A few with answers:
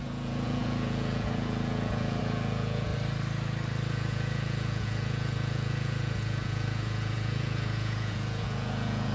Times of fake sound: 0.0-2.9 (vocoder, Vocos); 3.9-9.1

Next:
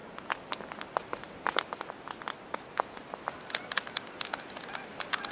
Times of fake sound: none

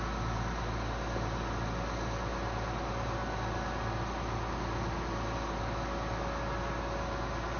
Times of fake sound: none

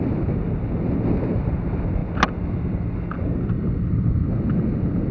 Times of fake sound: none

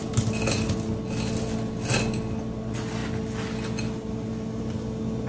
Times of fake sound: none

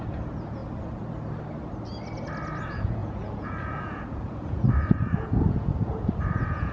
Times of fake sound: 0.0-0.6 (vocoder, Vocos); 2.6-6.7

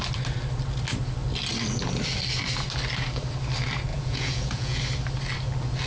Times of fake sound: 3.9-4.8 (vocoder, Vocos)

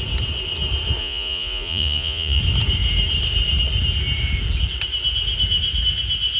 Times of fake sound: 1.0-2.4 (vocoder, Vocos)